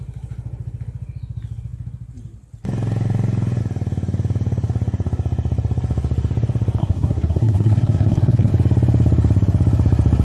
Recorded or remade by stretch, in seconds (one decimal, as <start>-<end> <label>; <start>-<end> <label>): 0.0-6.8 recorded; 6.8-8.5 remade; 8.5-10.2 recorded